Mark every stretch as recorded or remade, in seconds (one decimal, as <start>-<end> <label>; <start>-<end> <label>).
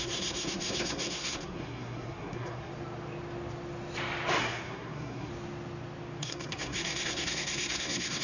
0.0-2.7 remade; 2.7-4.4 recorded; 4.4-5.3 remade; 5.3-6.2 recorded; 6.2-8.2 remade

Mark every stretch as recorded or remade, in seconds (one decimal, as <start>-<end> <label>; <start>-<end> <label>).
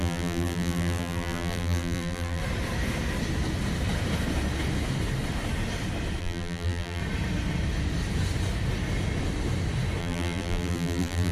0.0-2.4 remade; 2.4-6.2 recorded; 6.2-7.0 remade; 7.0-10.0 recorded; 10.0-11.3 remade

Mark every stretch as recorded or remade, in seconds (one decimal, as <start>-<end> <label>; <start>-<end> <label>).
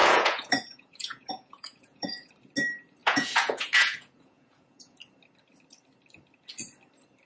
0.0-2.3 remade; 2.3-3.0 recorded; 3.0-5.0 remade; 5.0-7.3 recorded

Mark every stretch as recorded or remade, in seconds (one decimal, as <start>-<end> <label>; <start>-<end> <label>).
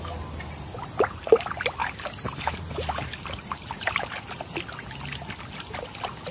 0.0-1.8 recorded; 1.8-4.6 remade; 4.6-6.3 recorded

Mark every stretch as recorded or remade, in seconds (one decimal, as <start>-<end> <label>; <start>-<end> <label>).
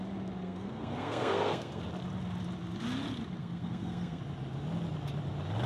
0.0-0.4 recorded; 0.4-1.8 remade; 1.8-3.4 recorded; 3.4-4.2 remade; 4.2-5.7 recorded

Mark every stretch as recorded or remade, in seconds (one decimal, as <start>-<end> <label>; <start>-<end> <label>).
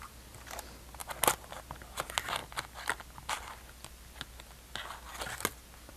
0.0-6.0 recorded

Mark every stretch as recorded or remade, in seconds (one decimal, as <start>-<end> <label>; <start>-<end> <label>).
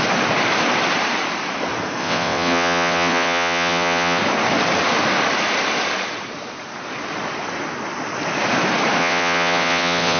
0.0-2.0 recorded; 2.0-4.2 remade; 4.2-9.0 recorded; 9.0-10.2 remade